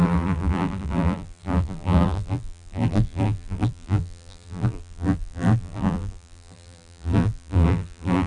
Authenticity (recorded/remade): remade